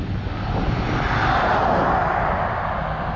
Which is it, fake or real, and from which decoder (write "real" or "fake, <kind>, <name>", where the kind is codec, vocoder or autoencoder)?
real